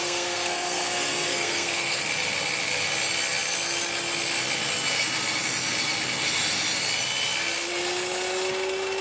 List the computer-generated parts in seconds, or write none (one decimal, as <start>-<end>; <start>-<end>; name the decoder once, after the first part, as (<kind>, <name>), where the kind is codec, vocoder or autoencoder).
0.0-2.0 (codec, SNAC)